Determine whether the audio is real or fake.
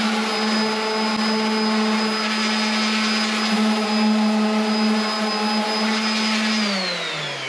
real